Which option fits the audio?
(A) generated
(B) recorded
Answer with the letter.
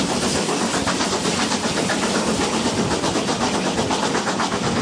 A